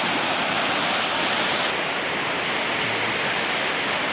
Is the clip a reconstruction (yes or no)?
no